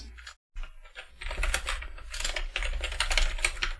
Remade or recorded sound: recorded